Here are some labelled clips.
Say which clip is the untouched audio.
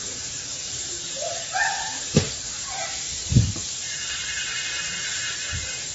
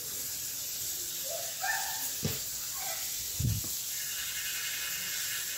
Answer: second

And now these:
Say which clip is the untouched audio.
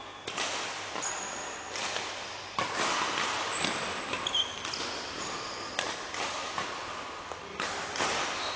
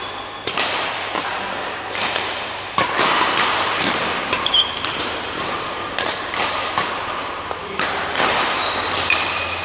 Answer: first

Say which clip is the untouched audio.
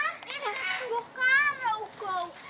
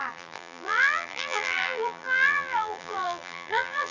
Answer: first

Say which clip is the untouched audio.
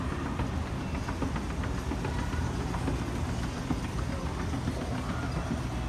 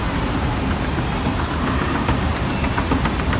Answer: first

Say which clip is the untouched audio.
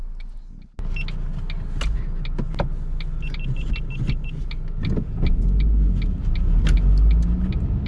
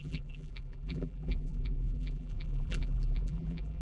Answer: first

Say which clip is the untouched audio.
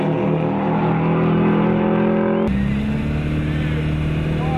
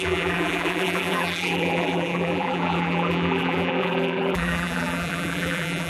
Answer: first